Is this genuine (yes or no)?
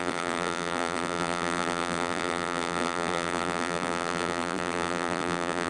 no